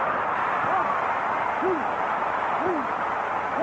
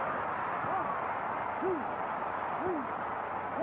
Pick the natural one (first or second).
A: second